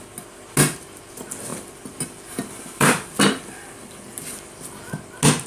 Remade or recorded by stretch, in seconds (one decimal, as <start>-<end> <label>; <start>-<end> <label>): 0.0-1.5 recorded; 1.5-4.8 remade; 4.8-5.5 recorded

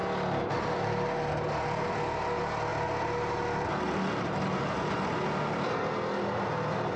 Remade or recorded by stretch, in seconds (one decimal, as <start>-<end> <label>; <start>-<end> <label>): 0.0-7.0 recorded

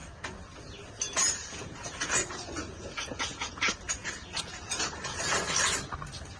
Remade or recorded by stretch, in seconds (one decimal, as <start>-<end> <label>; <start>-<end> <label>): 0.0-1.4 recorded; 1.4-5.2 remade; 5.2-6.4 recorded

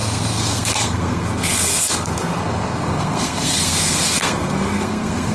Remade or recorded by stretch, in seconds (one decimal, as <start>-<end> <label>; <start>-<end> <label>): 0.0-5.3 remade